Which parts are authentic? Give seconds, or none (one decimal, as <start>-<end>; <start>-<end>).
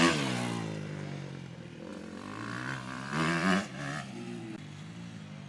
0.0-1.9; 4.4-5.5